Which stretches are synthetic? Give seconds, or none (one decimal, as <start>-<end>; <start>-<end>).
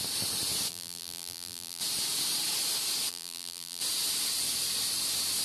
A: 0.7-1.8; 3.1-3.8